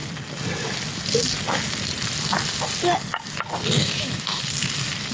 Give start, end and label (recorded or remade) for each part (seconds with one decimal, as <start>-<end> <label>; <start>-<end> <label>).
0.0-3.8 recorded; 3.8-4.4 remade; 4.4-5.1 recorded